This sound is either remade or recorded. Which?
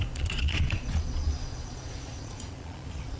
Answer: remade